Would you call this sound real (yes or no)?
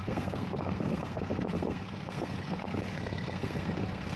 no